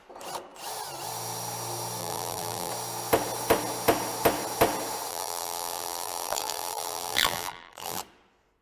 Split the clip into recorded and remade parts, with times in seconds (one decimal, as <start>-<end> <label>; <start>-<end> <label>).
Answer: 0.0-2.0 recorded; 2.0-2.7 remade; 2.7-5.1 recorded; 5.1-8.0 remade; 8.0-8.6 recorded